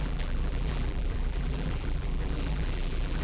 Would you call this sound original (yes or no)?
no